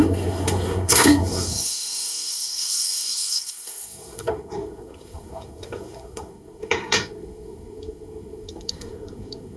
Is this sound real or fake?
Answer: fake